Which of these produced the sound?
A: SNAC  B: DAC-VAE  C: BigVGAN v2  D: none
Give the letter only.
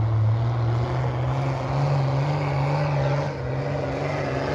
D